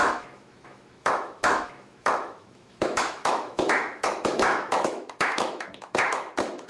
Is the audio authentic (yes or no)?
no